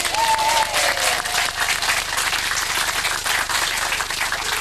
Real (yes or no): yes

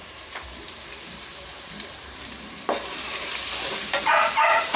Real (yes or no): no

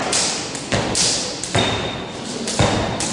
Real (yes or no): yes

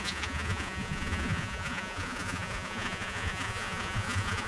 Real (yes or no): no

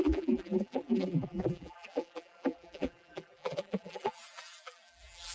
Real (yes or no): no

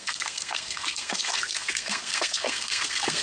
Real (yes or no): no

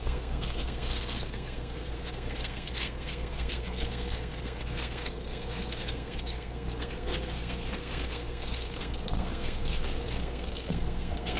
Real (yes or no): no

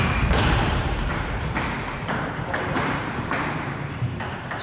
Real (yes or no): no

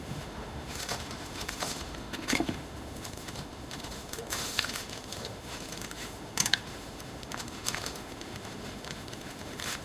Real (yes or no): no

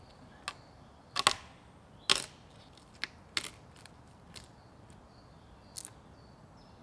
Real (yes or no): yes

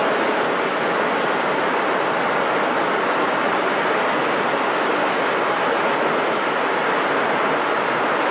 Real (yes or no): yes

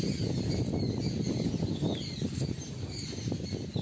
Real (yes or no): yes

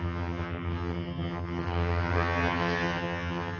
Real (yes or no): no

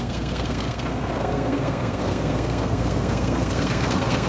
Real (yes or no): no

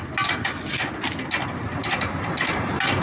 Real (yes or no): yes